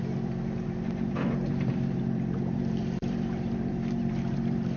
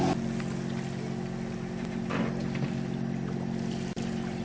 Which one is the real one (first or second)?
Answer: second